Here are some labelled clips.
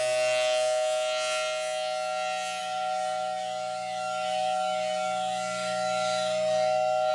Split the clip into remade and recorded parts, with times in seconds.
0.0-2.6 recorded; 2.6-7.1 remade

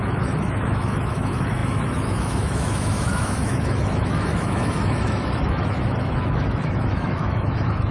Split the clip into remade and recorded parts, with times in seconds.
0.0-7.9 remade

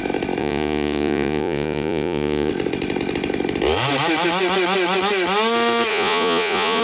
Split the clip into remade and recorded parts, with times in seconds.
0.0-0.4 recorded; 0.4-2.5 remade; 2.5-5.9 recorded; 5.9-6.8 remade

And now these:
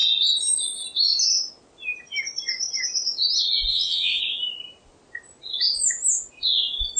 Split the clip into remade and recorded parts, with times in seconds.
0.0-3.7 recorded; 3.7-4.2 remade; 4.2-7.0 recorded

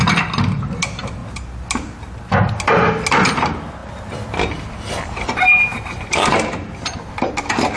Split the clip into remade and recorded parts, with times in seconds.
0.0-7.8 recorded

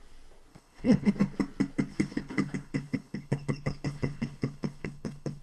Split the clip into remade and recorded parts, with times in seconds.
0.0-0.5 recorded; 0.5-1.1 remade; 1.1-1.9 recorded; 1.9-5.4 remade